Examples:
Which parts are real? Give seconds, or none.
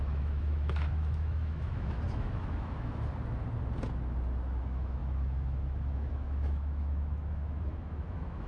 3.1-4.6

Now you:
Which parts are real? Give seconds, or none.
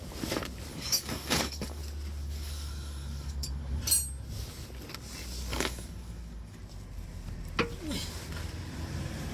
0.0-0.7; 1.8-2.2; 3.8-5.5; 6.6-9.3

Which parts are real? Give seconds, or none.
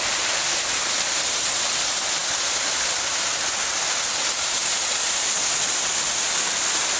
0.0-7.0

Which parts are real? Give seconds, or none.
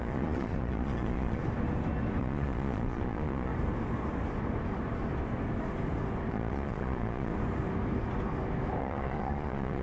1.4-2.2; 3.5-6.3; 7.3-8.8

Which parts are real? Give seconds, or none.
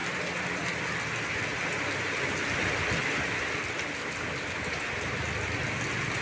0.0-6.2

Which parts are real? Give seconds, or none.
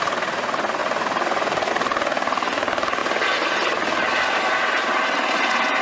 0.0-5.8